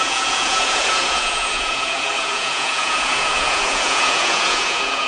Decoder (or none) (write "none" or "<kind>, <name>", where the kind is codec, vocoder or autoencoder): vocoder, Vocos